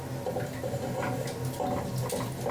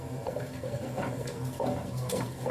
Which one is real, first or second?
first